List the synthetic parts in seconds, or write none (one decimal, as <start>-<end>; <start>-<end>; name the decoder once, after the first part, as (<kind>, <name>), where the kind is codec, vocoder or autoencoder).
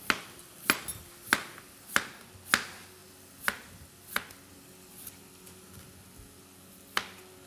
none